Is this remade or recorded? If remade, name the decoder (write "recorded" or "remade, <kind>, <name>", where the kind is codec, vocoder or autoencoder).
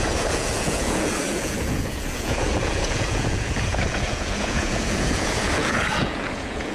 remade, vocoder, Vocos